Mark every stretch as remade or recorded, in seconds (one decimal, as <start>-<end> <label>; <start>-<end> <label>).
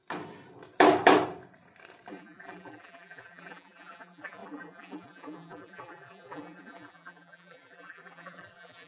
0.0-2.1 recorded; 2.1-8.9 remade